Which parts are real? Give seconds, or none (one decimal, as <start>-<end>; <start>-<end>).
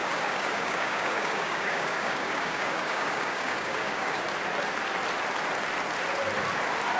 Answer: 4.2-7.0